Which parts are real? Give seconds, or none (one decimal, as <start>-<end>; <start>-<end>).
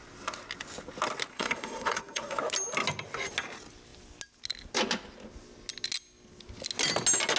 0.0-1.3; 2.4-7.4